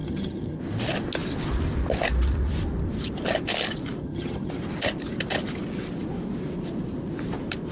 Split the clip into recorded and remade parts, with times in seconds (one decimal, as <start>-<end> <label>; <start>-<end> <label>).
0.0-0.6 remade; 0.6-4.0 recorded; 4.0-4.5 remade; 4.5-7.7 recorded